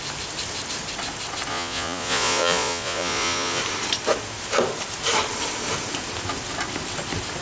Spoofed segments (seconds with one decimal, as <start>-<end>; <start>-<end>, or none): 1.5-3.6